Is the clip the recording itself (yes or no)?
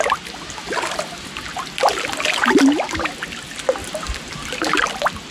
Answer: yes